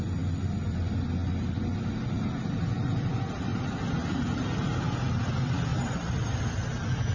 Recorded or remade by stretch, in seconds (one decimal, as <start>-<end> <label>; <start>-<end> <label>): 0.0-5.7 recorded; 5.7-6.4 remade; 6.4-7.1 recorded